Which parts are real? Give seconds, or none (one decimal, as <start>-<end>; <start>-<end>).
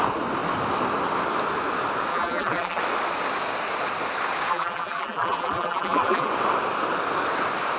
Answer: 0.0-2.1; 2.8-4.5; 6.3-7.8